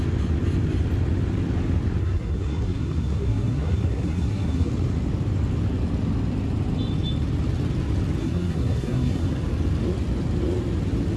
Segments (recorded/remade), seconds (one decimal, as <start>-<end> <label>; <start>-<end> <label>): 0.0-2.0 recorded; 2.0-4.7 remade; 4.7-8.2 recorded; 8.2-9.4 remade; 9.4-11.2 recorded